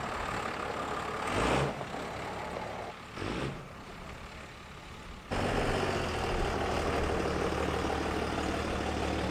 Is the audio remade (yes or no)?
no